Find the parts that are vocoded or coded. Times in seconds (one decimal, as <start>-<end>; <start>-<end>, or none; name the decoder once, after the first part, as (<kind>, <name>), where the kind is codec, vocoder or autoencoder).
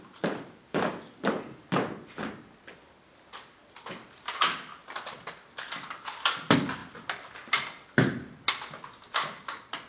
none